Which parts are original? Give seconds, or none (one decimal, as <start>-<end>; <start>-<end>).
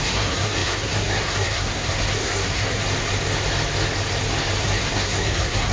2.8-4.6